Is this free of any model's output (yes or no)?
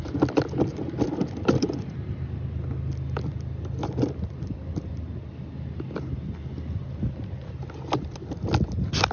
yes